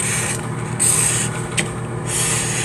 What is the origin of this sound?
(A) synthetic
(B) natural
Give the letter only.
B